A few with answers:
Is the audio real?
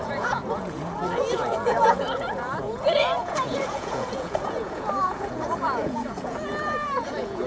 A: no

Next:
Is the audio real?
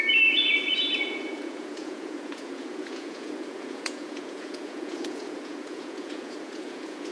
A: no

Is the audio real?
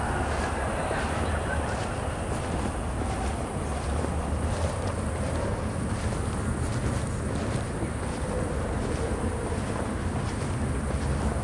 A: yes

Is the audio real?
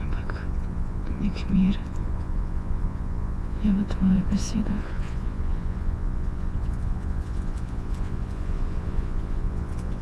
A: no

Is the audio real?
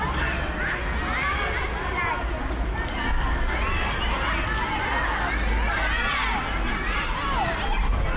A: yes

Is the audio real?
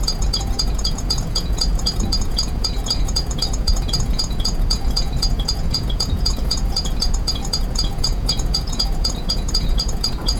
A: no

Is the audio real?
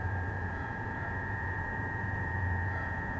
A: no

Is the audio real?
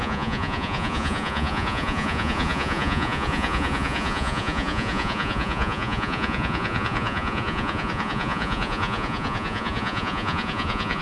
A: no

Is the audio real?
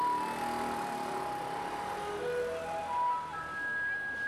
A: yes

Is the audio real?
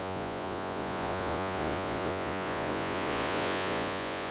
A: no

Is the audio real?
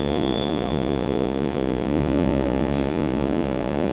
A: no